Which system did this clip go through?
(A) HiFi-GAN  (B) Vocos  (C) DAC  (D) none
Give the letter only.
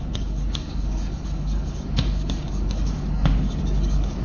C